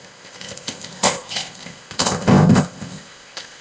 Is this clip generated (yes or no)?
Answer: yes